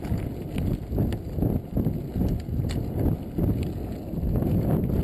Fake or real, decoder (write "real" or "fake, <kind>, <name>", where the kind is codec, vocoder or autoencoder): real